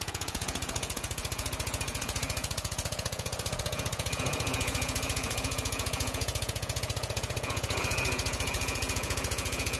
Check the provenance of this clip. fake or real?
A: fake